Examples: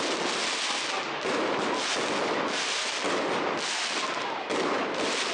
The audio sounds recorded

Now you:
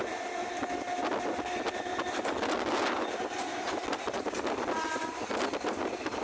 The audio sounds recorded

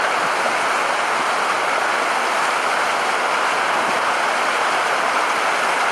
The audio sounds recorded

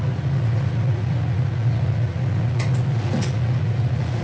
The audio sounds remade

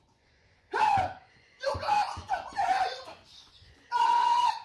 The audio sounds remade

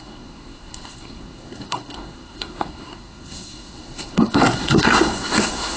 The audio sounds remade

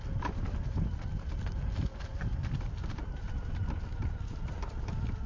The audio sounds recorded